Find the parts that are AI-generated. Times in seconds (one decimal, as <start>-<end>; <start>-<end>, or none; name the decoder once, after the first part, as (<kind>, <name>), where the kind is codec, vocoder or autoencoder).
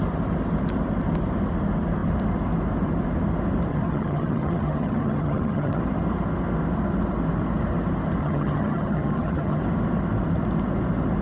3.7-5.8 (vocoder, HiFi-GAN); 8.2-9.6